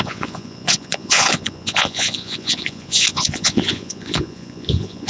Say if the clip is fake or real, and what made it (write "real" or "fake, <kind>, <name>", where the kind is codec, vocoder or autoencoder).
fake, vocoder, Vocos